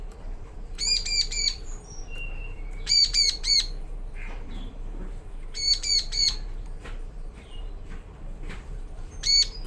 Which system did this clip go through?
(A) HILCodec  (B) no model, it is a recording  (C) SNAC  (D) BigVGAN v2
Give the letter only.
D